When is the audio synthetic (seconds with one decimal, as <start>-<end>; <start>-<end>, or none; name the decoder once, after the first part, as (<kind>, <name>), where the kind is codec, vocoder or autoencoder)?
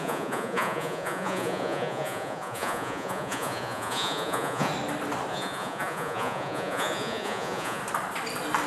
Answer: 0.0-4.7 (vocoder, Vocos); 5.3-7.8